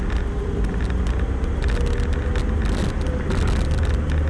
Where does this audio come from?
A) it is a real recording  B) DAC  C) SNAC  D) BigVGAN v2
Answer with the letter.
A